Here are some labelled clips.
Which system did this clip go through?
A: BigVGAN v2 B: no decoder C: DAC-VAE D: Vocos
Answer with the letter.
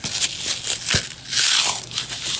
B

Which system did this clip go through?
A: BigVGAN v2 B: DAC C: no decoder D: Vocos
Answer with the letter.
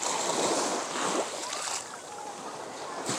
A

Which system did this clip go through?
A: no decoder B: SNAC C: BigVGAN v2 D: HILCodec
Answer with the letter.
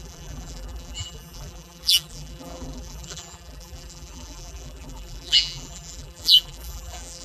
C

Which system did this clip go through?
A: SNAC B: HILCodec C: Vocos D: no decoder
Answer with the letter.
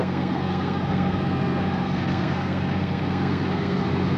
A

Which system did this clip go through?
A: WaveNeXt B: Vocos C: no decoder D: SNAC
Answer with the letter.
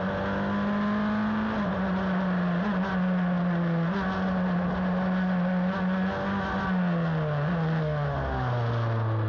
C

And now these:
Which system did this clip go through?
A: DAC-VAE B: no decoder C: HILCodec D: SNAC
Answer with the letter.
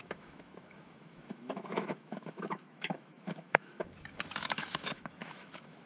A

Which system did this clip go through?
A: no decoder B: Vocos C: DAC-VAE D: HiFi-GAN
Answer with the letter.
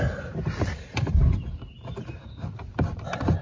A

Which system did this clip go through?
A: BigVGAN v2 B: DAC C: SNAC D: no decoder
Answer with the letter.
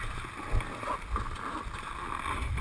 D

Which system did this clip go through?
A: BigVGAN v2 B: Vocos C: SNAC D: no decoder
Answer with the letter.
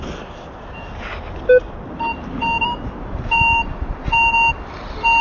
D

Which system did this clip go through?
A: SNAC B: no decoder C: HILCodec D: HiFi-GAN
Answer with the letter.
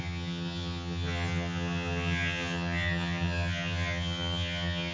D